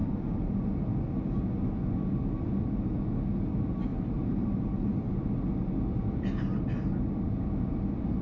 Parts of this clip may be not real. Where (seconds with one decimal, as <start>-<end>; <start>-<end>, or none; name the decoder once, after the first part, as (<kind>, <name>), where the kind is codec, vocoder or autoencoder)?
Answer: 0.0-0.6 (vocoder, BigVGAN v2); 3.9-5.1